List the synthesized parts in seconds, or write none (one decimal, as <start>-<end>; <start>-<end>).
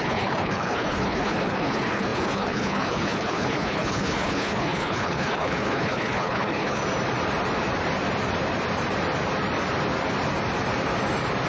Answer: 0.0-6.8